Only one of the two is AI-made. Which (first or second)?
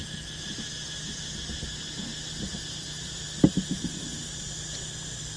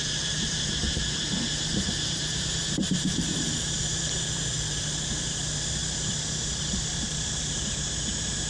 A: second